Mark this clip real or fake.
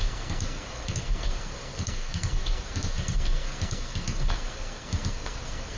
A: fake